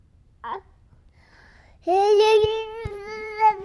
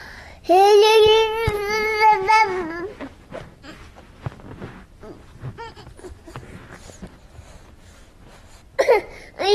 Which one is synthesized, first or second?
first